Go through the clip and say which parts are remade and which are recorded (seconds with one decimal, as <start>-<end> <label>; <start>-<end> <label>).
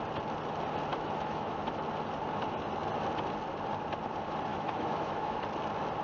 0.0-0.9 recorded; 0.9-1.8 remade; 1.8-4.5 recorded; 4.5-5.4 remade; 5.4-6.0 recorded